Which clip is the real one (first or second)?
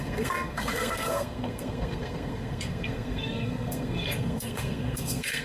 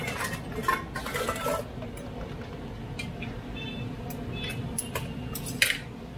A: second